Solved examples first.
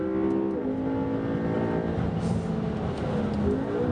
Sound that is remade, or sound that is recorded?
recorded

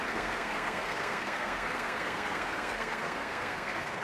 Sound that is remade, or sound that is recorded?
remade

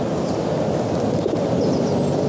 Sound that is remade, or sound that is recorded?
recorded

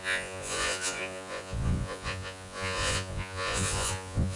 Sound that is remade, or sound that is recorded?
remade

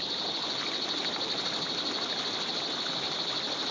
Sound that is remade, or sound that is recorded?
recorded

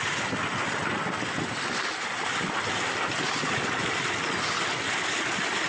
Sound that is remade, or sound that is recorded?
recorded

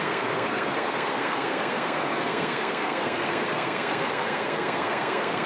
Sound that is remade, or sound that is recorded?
remade